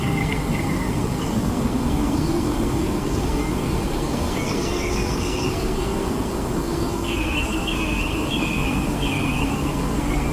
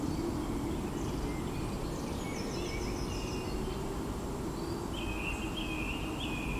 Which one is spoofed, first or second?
first